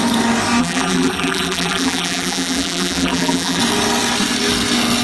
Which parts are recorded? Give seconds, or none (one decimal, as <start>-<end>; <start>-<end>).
0.0-0.6; 3.6-5.0